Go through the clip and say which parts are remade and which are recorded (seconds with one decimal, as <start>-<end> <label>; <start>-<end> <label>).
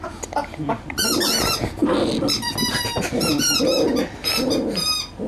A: 0.0-5.3 recorded